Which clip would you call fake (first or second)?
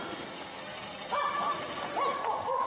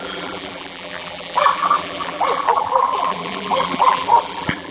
second